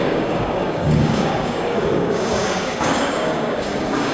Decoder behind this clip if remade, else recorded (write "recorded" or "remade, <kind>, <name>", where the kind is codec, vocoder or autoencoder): remade, codec, DAC